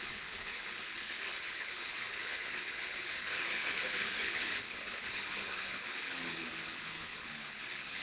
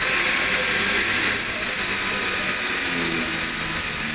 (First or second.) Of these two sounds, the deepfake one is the first